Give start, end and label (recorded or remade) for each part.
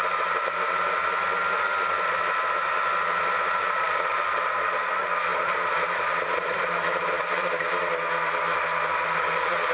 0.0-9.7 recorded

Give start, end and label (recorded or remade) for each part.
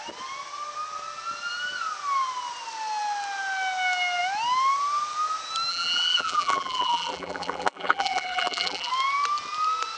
0.0-5.7 recorded; 5.7-8.9 remade; 8.9-10.0 recorded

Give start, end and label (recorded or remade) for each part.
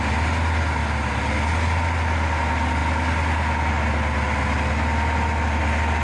0.0-6.0 recorded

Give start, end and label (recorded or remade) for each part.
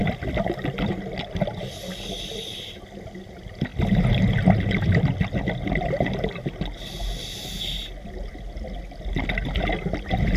0.0-10.4 recorded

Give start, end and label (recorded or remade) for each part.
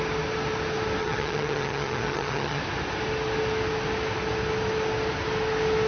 0.0-1.0 recorded; 1.0-2.6 remade; 2.6-5.9 recorded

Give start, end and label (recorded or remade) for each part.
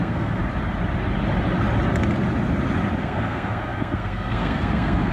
0.0-0.4 remade; 0.4-3.0 recorded; 3.0-5.1 remade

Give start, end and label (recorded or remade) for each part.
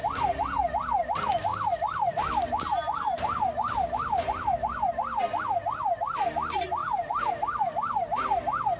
0.0-8.8 recorded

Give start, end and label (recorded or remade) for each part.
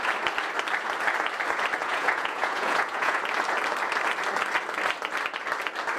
0.0-1.8 recorded; 1.8-3.2 remade; 3.2-6.0 recorded